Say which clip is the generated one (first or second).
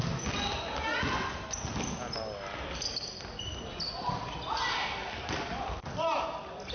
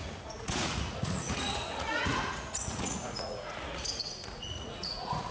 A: second